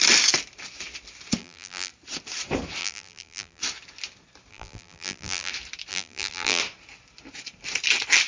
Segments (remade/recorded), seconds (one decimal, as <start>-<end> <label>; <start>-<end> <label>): 0.0-1.4 recorded; 1.4-1.9 remade; 1.9-2.8 recorded; 2.8-3.6 remade; 3.6-4.5 recorded; 4.5-5.5 remade; 5.5-5.9 recorded; 5.9-6.6 remade; 6.6-8.3 recorded